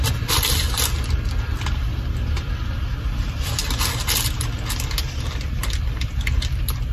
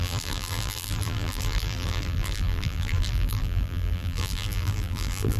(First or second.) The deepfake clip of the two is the second